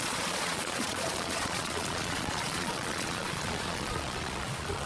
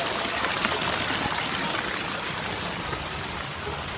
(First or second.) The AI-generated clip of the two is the first